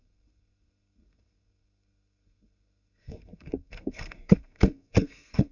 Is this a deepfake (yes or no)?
yes